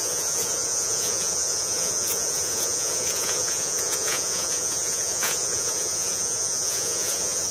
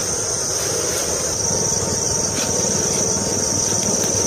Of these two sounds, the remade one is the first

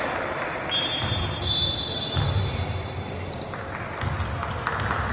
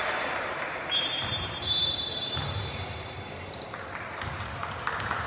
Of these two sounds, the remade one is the second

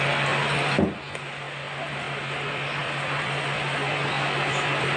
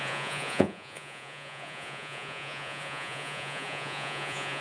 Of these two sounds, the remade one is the second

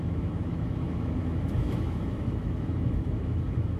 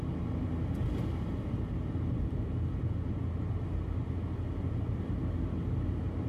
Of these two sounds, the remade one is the first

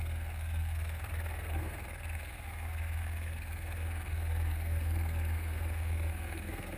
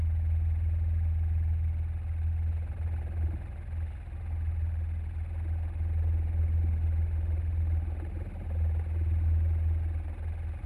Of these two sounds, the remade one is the first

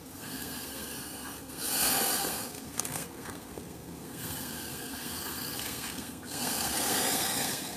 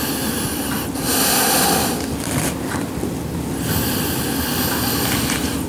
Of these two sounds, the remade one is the first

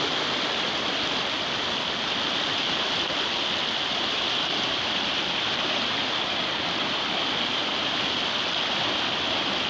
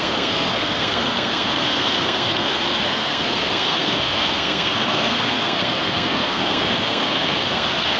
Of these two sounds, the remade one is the second